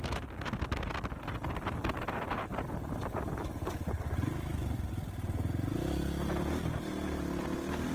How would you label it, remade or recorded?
recorded